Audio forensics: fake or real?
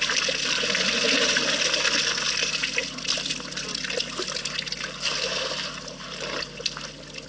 real